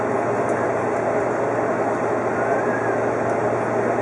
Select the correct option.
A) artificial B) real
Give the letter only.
B